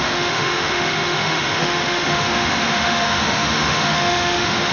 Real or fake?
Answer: fake